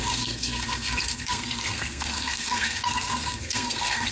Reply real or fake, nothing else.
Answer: fake